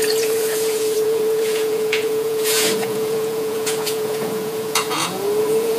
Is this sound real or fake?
fake